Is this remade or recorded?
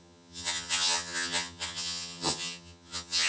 remade